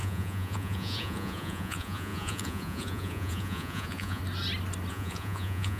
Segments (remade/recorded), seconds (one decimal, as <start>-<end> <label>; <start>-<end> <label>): 0.0-4.2 remade; 4.2-4.9 recorded; 4.9-5.8 remade